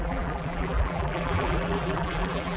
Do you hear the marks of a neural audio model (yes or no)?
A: yes